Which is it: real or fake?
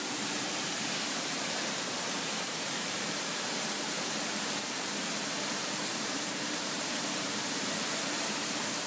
fake